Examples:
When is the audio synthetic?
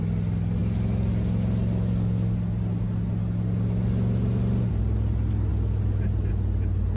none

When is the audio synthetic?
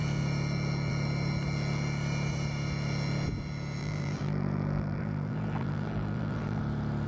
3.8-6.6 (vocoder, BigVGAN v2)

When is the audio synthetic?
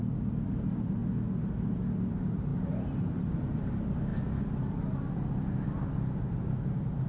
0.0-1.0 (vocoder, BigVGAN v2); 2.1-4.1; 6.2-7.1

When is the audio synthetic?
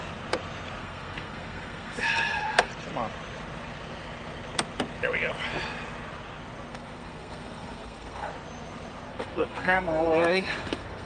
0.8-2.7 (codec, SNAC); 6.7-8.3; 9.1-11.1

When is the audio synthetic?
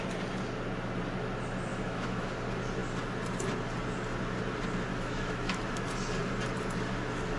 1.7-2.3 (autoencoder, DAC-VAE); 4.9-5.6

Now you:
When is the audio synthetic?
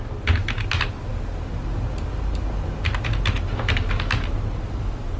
none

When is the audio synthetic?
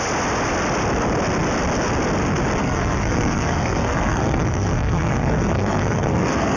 2.6-6.6 (codec, SNAC)